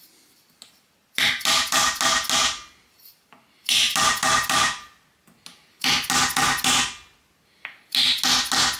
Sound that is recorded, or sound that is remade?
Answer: recorded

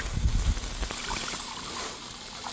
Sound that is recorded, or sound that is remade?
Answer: remade